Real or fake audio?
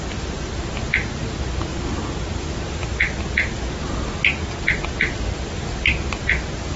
real